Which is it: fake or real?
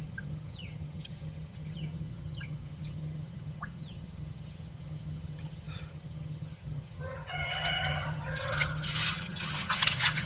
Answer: fake